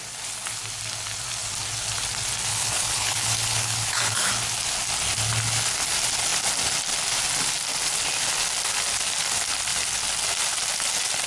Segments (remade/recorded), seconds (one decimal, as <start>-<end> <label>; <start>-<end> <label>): 0.0-2.5 recorded; 2.5-4.3 remade; 4.3-11.3 recorded